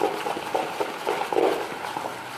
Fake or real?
real